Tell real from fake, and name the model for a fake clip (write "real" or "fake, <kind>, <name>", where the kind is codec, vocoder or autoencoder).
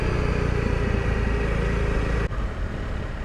real